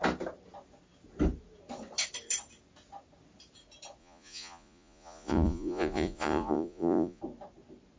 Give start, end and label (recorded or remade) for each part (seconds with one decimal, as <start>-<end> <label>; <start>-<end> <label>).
0.0-4.0 recorded; 4.0-7.2 remade; 7.2-8.0 recorded